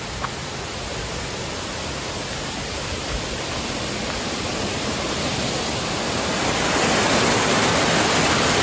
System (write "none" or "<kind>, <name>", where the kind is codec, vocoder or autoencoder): none